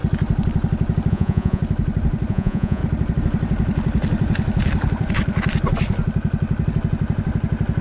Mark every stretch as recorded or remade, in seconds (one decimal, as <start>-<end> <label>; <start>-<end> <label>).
0.0-1.1 recorded; 1.1-1.6 remade; 1.6-2.3 recorded; 2.3-2.8 remade; 2.8-7.8 recorded